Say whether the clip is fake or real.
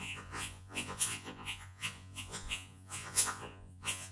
fake